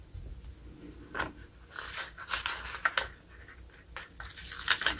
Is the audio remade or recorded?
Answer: recorded